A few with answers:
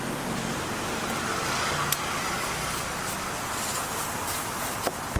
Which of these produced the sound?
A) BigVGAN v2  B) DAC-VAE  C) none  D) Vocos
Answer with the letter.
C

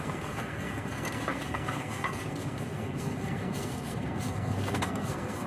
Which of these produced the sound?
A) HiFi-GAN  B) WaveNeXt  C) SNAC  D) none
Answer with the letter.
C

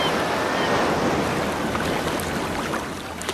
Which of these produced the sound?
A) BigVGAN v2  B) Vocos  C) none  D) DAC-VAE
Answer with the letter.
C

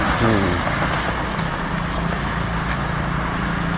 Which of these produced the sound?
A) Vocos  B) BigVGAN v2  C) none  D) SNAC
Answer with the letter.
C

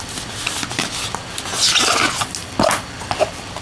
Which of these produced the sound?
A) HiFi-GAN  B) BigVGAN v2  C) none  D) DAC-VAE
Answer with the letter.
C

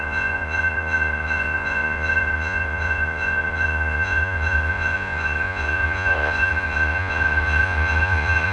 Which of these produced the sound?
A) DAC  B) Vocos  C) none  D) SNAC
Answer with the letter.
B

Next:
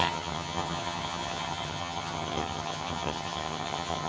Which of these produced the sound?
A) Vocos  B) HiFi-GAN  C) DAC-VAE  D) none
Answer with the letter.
B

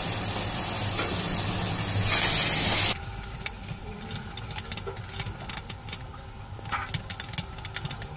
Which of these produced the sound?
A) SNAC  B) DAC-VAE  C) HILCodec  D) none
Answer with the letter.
D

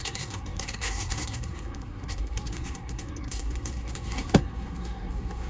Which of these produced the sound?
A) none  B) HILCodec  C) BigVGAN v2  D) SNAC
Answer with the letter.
D